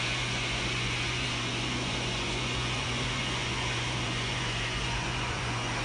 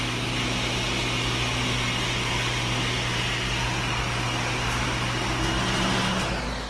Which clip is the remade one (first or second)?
first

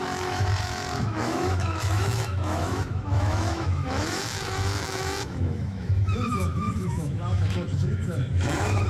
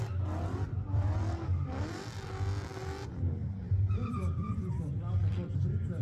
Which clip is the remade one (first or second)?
first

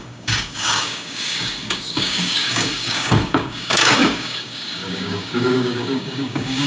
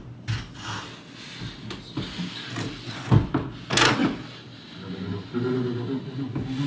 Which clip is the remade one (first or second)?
first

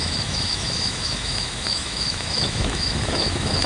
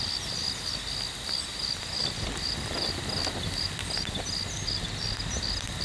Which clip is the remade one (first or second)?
first